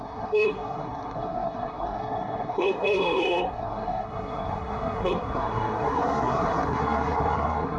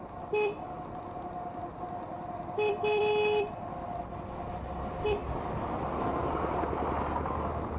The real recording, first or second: second